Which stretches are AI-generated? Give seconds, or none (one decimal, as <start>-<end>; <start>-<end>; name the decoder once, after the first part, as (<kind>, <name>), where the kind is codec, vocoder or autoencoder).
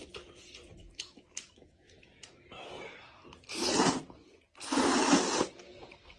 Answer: 0.8-2.7 (autoencoder, DAC-VAE)